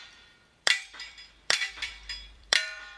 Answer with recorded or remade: remade